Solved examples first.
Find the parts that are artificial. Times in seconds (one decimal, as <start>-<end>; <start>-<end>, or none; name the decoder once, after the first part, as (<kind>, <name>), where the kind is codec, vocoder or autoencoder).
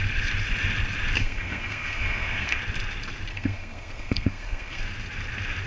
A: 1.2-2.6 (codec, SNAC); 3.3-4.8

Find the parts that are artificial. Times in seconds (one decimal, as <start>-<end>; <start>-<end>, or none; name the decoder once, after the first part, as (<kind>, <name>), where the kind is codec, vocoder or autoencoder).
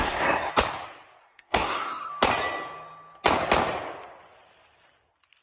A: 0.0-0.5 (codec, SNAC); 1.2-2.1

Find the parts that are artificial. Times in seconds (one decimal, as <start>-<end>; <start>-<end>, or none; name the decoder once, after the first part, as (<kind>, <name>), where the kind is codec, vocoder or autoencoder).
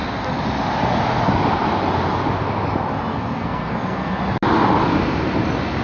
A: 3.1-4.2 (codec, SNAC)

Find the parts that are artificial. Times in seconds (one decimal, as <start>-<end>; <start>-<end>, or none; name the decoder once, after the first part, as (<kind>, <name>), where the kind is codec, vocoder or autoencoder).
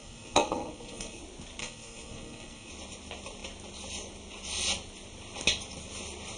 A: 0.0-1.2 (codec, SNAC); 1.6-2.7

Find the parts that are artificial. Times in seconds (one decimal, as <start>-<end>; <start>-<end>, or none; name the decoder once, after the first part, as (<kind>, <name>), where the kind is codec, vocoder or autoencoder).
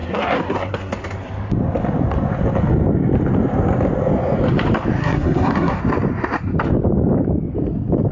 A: 0.0-0.9 (codec, SNAC); 5.0-5.8